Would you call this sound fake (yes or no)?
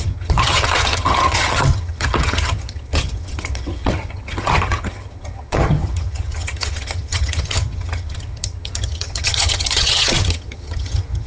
yes